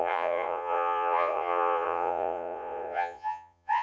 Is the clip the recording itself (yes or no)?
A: no